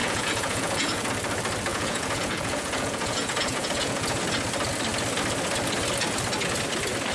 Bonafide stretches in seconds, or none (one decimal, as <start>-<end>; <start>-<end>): 1.1-1.7; 4.2-7.1